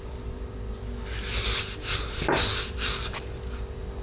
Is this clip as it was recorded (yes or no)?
yes